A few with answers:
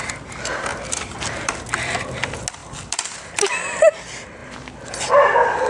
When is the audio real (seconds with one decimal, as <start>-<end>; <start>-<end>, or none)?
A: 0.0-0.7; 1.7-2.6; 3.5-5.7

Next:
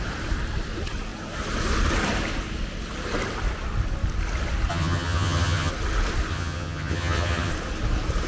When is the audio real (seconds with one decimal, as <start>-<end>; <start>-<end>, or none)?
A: 0.0-4.7; 5.7-6.3; 7.5-8.3

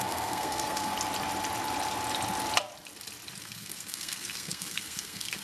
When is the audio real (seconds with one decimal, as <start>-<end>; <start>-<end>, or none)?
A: 0.9-3.4